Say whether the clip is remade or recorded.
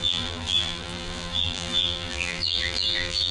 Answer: remade